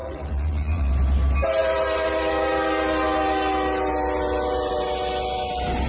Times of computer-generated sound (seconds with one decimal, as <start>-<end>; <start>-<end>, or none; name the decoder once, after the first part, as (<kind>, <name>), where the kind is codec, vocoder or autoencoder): 0.0-0.9 (vocoder, Vocos)